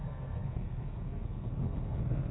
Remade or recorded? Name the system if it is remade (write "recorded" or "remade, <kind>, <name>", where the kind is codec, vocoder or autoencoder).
remade, codec, SNAC